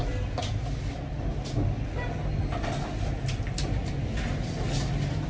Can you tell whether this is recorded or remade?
recorded